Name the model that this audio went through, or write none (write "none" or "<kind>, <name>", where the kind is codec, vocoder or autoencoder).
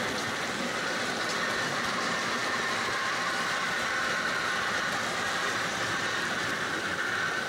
none